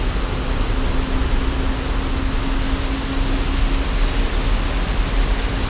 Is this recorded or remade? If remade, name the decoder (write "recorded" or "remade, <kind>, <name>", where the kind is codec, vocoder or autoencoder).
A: recorded